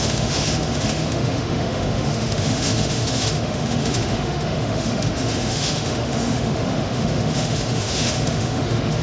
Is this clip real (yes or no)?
no